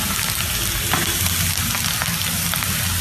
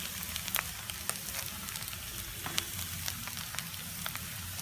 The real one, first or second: first